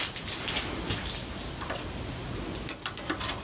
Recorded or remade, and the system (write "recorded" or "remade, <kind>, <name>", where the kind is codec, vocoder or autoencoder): recorded